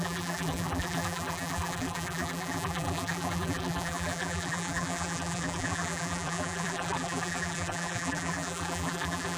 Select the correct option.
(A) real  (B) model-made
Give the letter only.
B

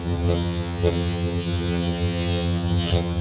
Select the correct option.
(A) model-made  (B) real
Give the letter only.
A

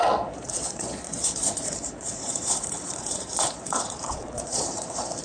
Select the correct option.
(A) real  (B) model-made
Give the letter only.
B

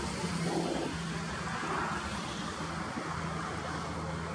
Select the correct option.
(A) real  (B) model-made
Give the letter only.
A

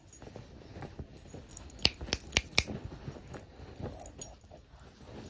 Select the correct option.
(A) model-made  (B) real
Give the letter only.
B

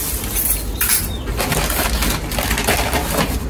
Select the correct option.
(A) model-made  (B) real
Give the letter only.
B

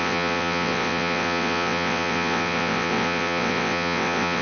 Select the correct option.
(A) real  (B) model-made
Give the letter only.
B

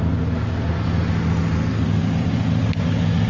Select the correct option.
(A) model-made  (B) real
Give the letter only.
B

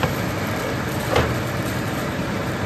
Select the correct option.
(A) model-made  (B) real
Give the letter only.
A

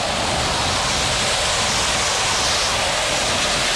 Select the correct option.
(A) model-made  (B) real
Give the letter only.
B